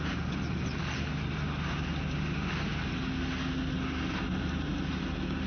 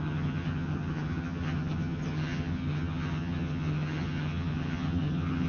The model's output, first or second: second